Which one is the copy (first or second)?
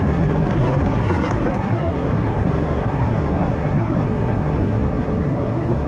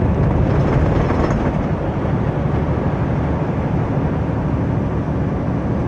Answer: first